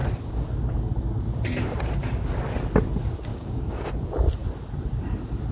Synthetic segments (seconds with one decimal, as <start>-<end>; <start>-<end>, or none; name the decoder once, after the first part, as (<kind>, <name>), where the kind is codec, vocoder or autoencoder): 3.3-3.9 (codec, DAC)